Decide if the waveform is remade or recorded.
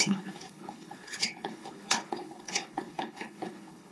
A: remade